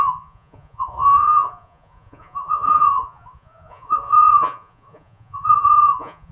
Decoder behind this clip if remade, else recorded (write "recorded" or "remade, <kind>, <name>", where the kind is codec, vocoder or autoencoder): remade, vocoder, Vocos